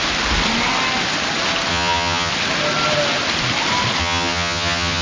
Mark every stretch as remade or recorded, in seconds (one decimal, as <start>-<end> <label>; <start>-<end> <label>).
0.0-1.7 recorded; 1.7-2.3 remade; 2.3-4.0 recorded; 4.0-5.0 remade